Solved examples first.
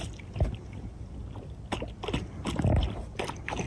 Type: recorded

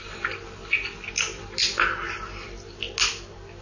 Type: recorded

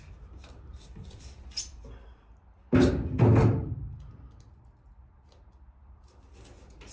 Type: recorded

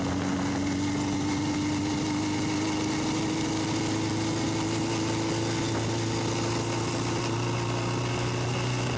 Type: recorded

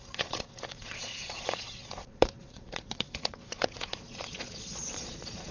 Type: remade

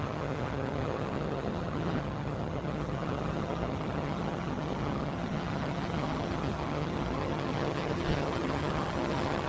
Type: remade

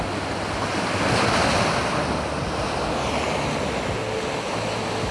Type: recorded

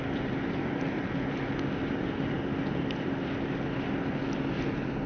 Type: recorded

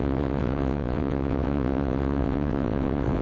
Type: remade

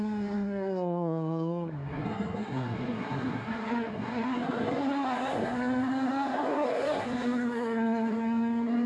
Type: remade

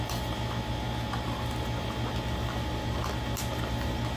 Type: recorded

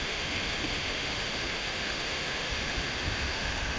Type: remade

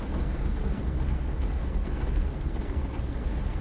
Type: remade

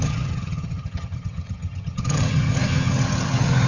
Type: remade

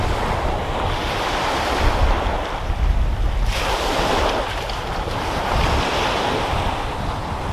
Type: recorded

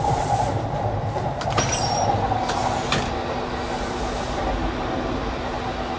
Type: recorded